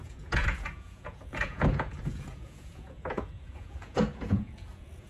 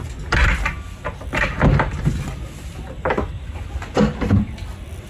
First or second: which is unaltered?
second